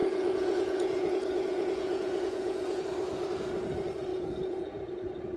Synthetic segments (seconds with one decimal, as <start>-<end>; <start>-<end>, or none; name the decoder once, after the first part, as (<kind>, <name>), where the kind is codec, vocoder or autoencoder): 0.0-2.8 (vocoder, Vocos); 4.1-4.8